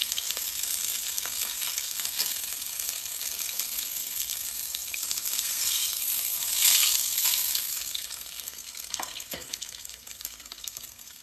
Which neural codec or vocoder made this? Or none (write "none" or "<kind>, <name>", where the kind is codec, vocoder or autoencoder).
codec, SNAC